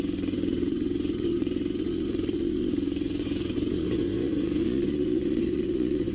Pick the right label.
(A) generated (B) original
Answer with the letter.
A